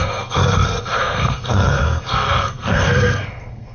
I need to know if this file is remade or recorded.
remade